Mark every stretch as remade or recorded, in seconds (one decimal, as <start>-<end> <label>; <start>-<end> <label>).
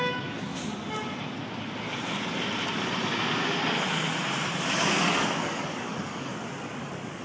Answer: 0.0-0.5 remade; 0.5-4.8 recorded; 4.8-6.3 remade; 6.3-7.2 recorded